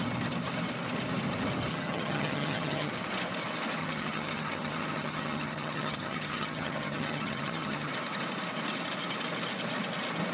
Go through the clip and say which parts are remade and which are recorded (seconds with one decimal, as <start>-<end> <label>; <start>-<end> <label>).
0.0-1.7 recorded; 1.7-2.9 remade; 2.9-3.8 recorded; 3.8-7.9 remade; 7.9-10.3 recorded